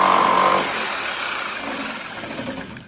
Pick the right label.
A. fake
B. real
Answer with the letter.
B